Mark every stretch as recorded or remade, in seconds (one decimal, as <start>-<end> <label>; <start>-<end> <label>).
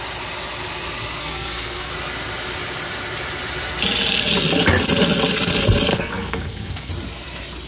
0.0-1.2 recorded; 1.2-1.9 remade; 1.9-5.9 recorded; 5.9-6.9 remade; 6.9-7.7 recorded